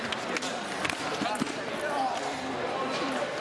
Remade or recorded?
recorded